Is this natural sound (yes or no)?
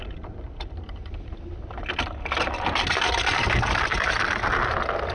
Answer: yes